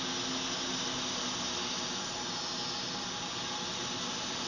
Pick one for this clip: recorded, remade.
recorded